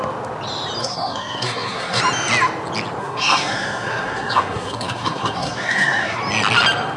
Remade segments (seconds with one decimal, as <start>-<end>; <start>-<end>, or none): 0.8-2.0; 3.0-6.2